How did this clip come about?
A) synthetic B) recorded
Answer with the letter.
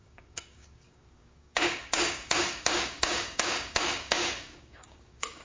A